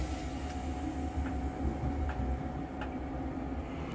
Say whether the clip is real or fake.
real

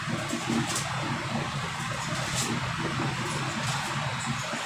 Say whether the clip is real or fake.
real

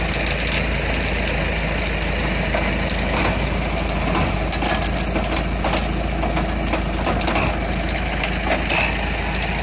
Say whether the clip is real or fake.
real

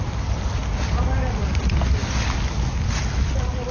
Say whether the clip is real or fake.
real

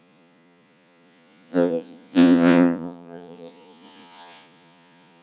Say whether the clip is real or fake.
fake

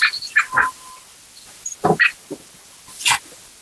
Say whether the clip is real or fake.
real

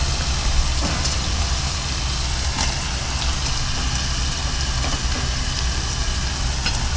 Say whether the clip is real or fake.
real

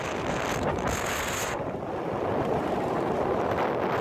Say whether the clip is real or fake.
real